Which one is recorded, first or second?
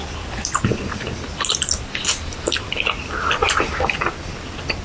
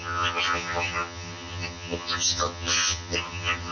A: first